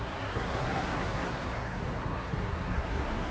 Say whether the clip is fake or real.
fake